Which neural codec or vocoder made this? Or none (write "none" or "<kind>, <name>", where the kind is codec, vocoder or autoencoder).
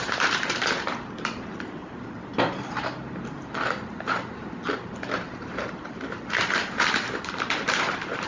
vocoder, BigVGAN v2